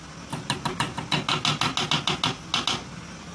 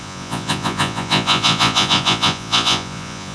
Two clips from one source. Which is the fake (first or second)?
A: second